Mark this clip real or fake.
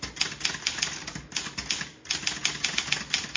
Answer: real